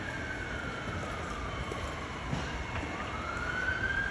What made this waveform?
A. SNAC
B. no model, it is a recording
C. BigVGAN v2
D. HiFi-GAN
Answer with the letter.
B